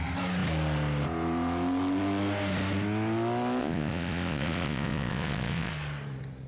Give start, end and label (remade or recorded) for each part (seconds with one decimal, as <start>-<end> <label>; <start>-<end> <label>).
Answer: 0.0-3.6 recorded; 3.6-5.7 remade; 5.7-6.5 recorded